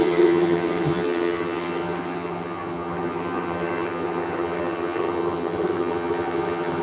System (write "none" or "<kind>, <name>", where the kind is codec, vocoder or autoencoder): vocoder, HiFi-GAN